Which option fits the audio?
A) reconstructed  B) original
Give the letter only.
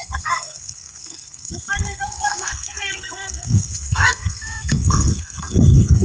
A